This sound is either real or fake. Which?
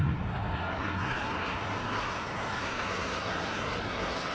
fake